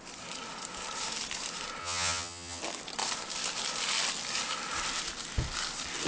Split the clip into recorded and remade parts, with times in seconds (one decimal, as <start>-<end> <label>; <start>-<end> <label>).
0.0-1.8 recorded; 1.8-2.6 remade; 2.6-6.1 recorded